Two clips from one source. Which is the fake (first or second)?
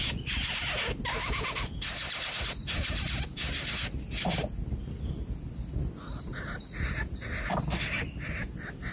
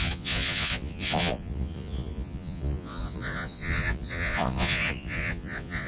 second